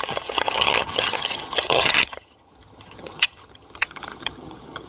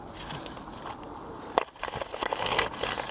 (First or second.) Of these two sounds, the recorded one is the second